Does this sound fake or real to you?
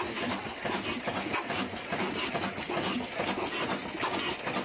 real